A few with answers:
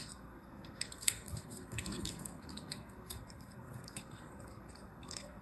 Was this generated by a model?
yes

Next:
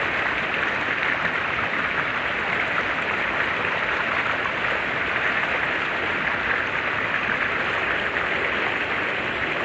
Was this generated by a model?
no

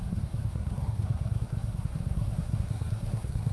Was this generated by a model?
yes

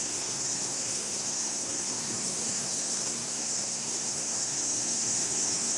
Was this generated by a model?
yes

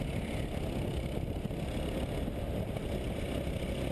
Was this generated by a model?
no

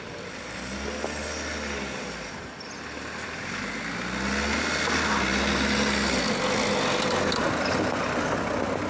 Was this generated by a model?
no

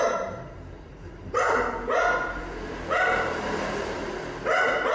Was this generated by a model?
no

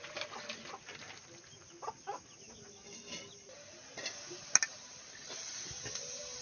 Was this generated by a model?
no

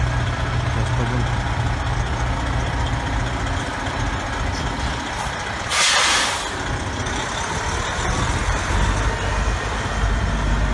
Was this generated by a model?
no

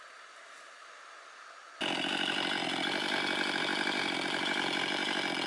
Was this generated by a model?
no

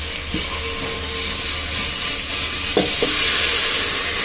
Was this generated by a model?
no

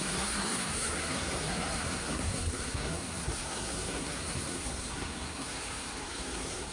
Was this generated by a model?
yes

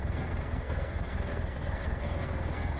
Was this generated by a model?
yes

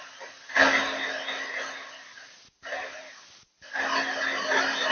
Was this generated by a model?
no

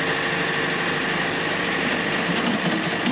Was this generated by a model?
no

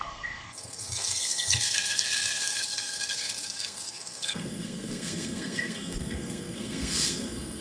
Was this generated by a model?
yes